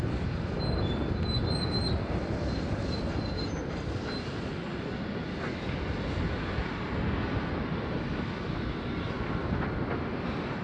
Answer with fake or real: real